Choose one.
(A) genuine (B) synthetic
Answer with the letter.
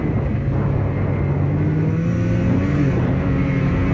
A